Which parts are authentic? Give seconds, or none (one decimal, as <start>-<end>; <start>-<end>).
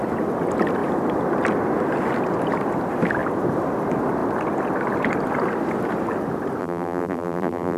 0.0-6.6